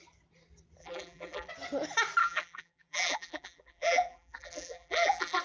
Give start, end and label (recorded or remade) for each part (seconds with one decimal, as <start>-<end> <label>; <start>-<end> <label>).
0.0-0.8 recorded; 0.8-1.5 remade; 1.5-2.2 recorded; 2.2-5.4 remade